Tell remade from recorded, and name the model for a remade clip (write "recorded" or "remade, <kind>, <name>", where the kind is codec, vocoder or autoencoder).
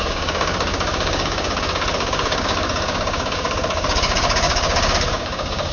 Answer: remade, codec, DAC